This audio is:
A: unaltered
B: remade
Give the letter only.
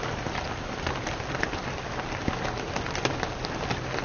A